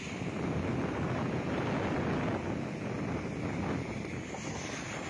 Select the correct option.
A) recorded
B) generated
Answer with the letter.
A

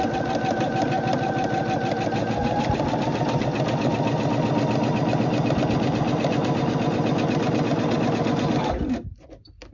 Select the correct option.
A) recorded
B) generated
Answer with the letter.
A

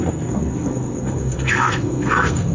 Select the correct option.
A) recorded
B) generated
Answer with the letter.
B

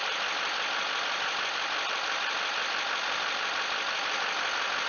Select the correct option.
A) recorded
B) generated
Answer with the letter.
A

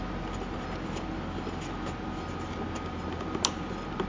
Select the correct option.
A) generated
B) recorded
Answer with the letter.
B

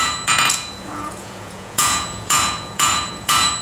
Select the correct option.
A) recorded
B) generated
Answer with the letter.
B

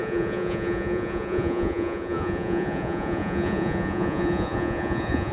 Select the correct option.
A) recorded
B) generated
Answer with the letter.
B